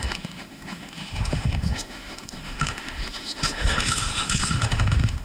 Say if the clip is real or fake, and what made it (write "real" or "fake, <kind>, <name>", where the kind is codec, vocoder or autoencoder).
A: fake, autoencoder, DAC-VAE